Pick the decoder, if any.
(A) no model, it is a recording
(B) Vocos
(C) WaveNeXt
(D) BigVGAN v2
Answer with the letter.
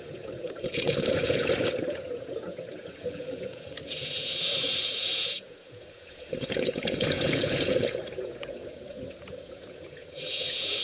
B